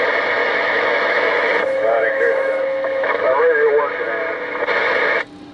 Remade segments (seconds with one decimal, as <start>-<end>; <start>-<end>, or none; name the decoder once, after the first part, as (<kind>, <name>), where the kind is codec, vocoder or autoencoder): 0.4-3.7 (autoencoder, DAC-VAE)